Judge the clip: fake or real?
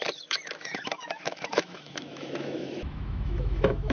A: fake